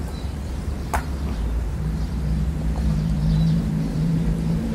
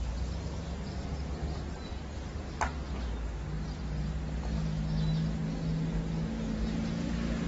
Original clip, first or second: second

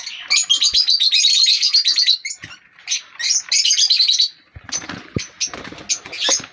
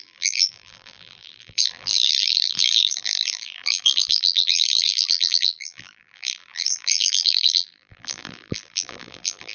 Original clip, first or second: first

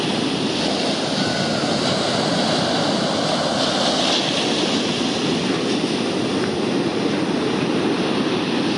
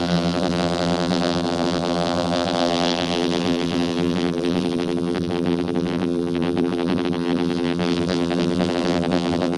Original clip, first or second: first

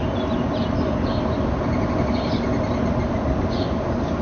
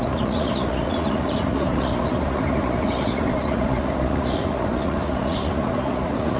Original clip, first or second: first